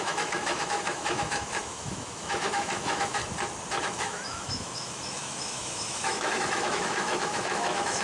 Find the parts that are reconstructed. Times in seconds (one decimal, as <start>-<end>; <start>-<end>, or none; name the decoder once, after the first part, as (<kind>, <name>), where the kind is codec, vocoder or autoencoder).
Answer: 0.0-3.2 (autoencoder, DAC-VAE); 3.8-8.0